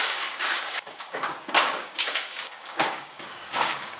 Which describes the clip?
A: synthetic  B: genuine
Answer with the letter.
A